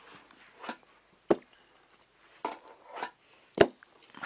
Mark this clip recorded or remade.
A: recorded